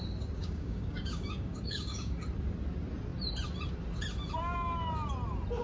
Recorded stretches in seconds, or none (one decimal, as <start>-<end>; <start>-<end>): 0.0-0.4; 2.2-5.6